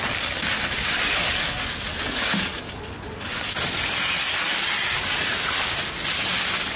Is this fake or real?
real